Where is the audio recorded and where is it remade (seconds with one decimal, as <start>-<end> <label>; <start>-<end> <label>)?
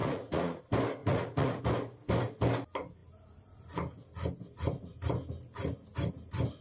0.0-0.6 remade; 0.6-1.0 recorded; 1.0-1.6 remade; 1.6-6.6 recorded